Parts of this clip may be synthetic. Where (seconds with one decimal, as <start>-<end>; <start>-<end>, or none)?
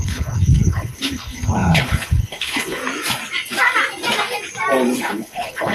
0.0-2.8; 5.0-5.7